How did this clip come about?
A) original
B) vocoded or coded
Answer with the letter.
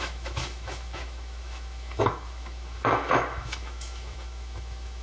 B